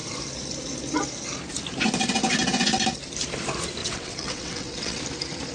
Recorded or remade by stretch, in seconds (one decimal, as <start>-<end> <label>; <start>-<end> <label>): 0.0-3.8 recorded; 3.8-5.0 remade; 5.0-5.5 recorded